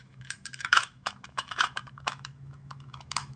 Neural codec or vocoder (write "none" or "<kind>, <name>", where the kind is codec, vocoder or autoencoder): autoencoder, DAC-VAE